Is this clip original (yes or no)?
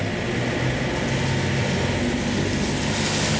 yes